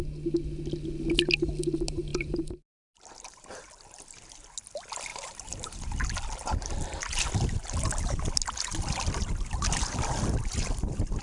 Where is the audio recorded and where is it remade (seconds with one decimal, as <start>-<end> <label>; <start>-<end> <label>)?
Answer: 0.0-2.1 recorded; 2.1-3.7 remade; 3.7-5.1 recorded; 5.1-6.0 remade; 6.0-11.2 recorded